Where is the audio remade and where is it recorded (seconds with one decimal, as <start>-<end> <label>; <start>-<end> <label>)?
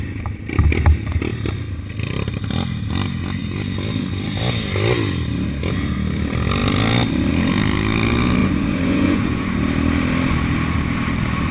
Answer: 0.0-8.4 recorded; 8.4-9.5 remade; 9.5-11.5 recorded